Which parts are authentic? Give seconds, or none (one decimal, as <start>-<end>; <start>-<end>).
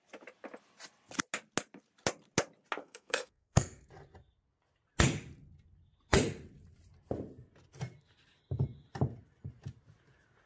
0.0-2.8; 3.9-10.5